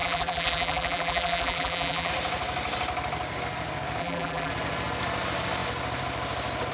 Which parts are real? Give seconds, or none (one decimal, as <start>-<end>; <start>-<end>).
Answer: 2.1-4.0; 4.5-6.7